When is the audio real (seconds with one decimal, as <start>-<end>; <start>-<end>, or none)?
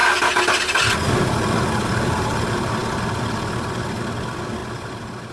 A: 0.8-2.8; 4.0-4.6